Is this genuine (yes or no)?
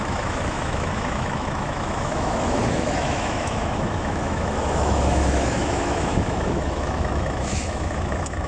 no